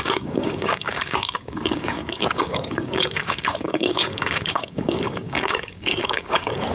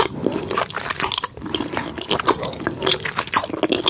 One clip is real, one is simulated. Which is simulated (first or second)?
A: first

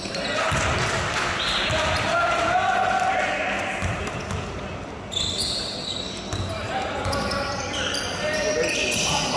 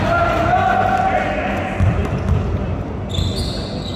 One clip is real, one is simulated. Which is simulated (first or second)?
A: first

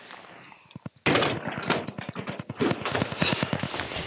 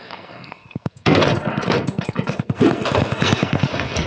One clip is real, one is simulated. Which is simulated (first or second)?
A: second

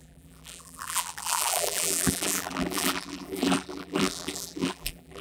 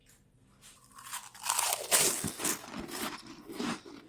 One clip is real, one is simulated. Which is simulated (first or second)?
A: first